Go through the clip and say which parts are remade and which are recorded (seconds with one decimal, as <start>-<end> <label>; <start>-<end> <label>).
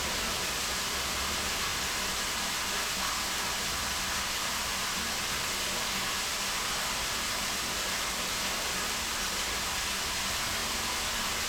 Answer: 0.0-11.5 recorded